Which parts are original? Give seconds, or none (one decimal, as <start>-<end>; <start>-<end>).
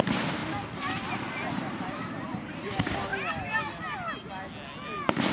0.4-1.5; 3.1-5.3